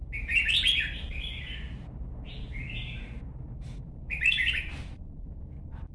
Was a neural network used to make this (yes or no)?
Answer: yes